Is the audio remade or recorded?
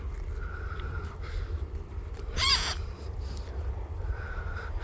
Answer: remade